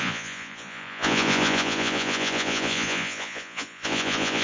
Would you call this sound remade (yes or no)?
yes